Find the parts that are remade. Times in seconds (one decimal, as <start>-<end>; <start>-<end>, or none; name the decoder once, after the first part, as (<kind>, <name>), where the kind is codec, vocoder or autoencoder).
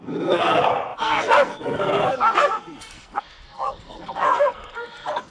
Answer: 0.0-5.3 (codec, SNAC)